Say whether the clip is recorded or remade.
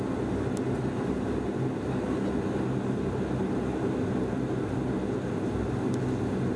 recorded